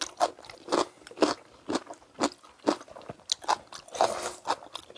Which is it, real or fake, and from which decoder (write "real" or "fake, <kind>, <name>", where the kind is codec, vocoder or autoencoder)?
real